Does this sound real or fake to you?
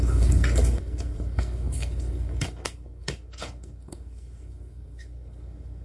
fake